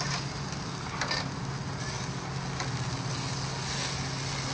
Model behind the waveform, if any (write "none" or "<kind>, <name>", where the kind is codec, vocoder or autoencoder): none